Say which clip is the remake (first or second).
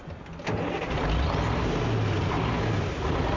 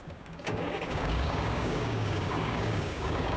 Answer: second